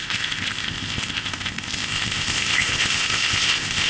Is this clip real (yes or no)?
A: no